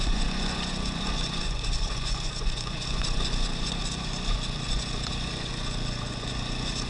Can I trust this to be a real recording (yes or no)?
no